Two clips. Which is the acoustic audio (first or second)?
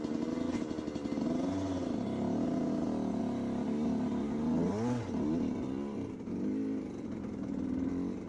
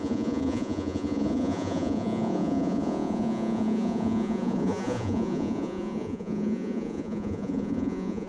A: first